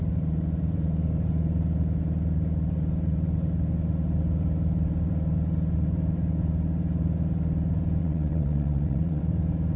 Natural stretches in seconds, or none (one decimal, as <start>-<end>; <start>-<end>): 0.0-8.0; 9.2-9.8